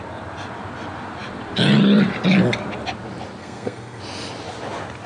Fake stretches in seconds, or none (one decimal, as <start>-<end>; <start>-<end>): 3.4-4.0

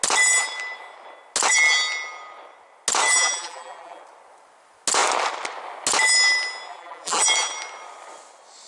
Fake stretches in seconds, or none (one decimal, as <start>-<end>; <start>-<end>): 3.1-4.0; 6.7-7.2

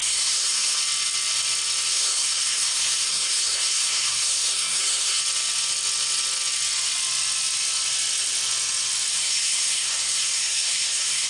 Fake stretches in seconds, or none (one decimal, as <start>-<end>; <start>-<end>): 0.0-0.8; 1.9-5.2; 9.1-11.3